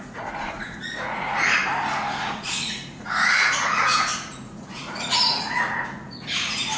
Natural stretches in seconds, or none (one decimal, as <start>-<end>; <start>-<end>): 1.6-2.2

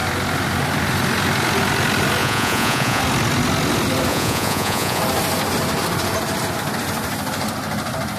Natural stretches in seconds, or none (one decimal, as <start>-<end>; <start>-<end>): 0.0-2.2; 3.0-4.1; 5.0-8.2

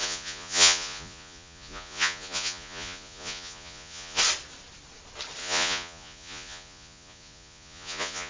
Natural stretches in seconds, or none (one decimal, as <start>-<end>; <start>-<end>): 4.2-5.4